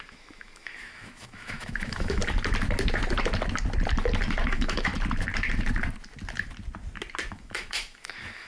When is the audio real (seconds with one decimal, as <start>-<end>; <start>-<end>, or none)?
2.2-4.5; 4.9-7.3